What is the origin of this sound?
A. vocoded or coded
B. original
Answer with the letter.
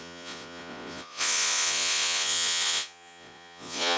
A